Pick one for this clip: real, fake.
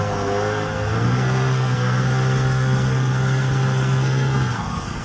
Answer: fake